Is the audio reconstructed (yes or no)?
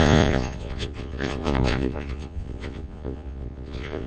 yes